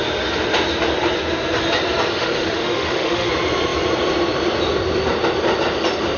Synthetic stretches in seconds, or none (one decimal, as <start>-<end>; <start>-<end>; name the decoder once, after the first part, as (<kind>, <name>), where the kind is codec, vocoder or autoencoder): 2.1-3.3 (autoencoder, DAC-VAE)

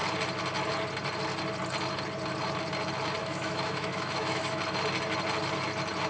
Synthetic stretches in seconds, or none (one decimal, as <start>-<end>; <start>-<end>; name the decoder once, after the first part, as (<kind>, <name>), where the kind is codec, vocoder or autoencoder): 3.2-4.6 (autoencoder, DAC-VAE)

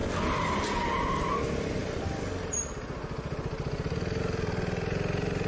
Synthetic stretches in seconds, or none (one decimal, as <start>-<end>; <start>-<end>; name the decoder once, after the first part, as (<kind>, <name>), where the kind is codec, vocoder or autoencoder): none

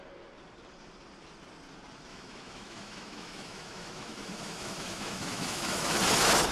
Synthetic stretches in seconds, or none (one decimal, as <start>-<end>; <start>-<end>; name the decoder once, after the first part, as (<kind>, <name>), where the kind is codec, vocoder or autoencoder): 2.1-6.0 (autoencoder, DAC-VAE)